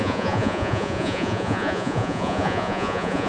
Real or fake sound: fake